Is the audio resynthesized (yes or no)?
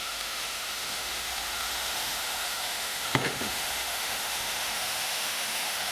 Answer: yes